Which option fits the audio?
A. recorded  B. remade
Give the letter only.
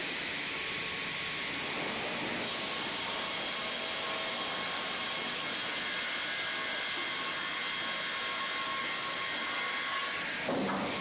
A